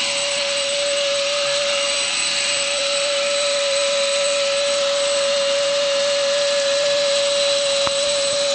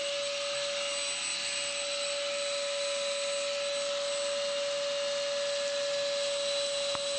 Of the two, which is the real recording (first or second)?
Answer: second